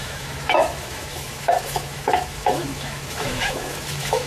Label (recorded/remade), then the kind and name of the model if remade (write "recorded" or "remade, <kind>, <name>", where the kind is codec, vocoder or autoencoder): remade, autoencoder, DAC-VAE